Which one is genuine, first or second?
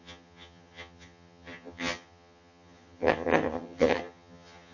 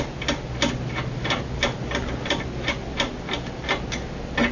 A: second